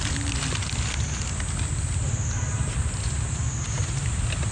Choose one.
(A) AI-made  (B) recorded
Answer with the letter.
B